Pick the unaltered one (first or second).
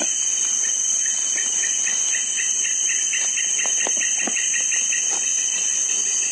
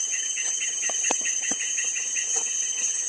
first